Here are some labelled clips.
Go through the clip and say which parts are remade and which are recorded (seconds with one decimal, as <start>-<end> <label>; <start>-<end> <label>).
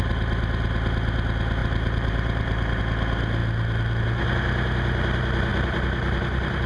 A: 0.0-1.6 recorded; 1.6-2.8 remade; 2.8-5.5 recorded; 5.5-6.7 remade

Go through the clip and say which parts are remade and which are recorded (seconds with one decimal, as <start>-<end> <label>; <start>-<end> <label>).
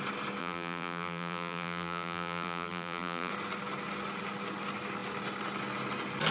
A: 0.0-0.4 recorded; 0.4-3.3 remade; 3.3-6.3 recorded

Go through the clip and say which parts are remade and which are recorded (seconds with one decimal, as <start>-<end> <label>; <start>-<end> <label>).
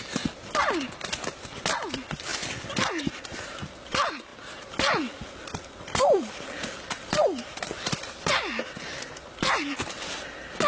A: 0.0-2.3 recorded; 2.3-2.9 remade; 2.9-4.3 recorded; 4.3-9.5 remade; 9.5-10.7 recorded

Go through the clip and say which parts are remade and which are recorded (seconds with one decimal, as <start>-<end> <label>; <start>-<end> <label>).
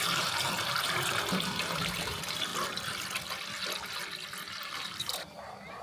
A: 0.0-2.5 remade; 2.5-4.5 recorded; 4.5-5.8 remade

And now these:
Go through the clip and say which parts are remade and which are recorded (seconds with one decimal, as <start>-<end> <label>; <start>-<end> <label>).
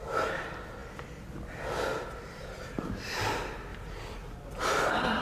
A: 0.0-3.7 recorded; 3.7-4.6 remade; 4.6-5.2 recorded